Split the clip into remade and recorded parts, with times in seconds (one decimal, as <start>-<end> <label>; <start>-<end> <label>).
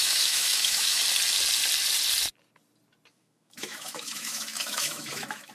0.0-1.0 remade; 1.0-3.1 recorded; 3.1-5.5 remade